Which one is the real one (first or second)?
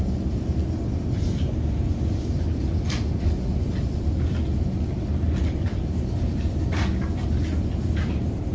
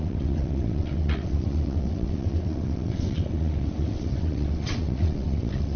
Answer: first